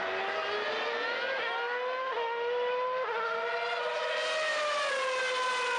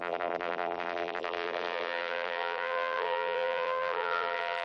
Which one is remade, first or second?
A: second